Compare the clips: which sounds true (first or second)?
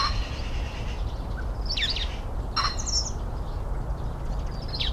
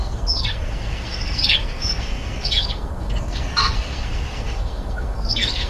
first